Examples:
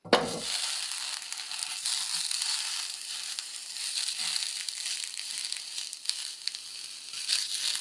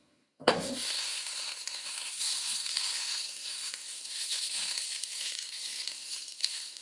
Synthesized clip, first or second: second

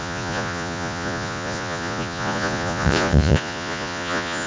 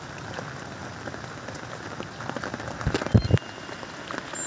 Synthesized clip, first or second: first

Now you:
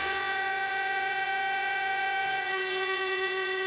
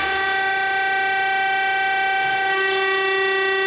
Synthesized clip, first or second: first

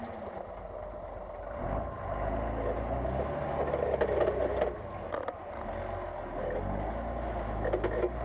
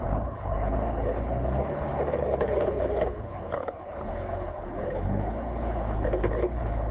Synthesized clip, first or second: second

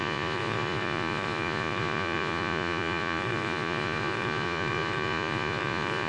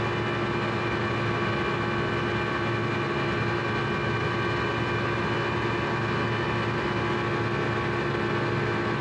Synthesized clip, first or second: first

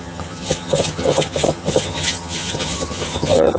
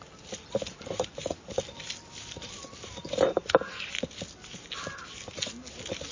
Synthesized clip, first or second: first